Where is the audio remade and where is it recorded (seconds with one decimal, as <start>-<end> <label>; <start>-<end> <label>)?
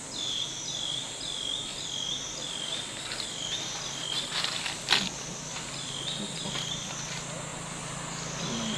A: 0.0-8.8 recorded